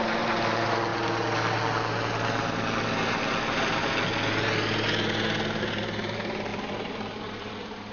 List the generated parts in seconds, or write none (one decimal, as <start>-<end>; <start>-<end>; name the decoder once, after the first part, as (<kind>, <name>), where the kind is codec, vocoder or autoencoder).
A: 0.0-0.9 (vocoder, BigVGAN v2); 5.6-7.9